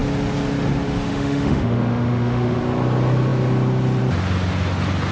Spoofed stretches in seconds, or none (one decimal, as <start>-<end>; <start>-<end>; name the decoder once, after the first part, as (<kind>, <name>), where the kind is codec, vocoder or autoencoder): 1.1-2.6 (autoencoder, DAC-VAE)